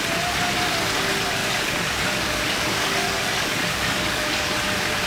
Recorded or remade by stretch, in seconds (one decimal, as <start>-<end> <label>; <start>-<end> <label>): 0.0-1.4 recorded; 1.4-4.5 remade; 4.5-5.1 recorded